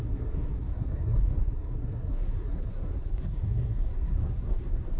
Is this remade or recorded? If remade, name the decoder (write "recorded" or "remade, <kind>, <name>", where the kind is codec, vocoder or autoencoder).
remade, codec, SNAC